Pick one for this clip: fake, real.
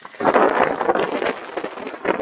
real